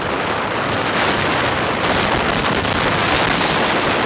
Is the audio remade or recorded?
recorded